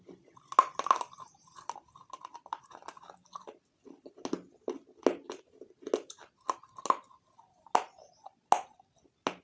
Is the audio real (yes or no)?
yes